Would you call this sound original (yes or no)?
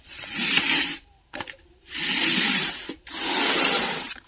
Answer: no